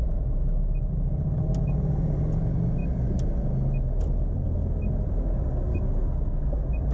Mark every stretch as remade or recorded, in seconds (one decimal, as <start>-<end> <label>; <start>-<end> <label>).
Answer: 0.0-6.9 recorded